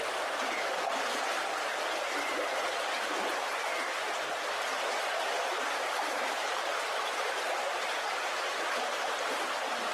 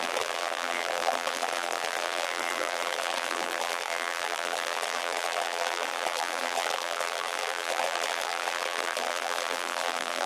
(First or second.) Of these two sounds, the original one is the first